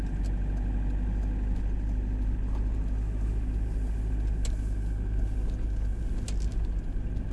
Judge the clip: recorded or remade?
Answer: recorded